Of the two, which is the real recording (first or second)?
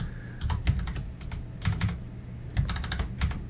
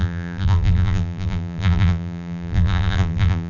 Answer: first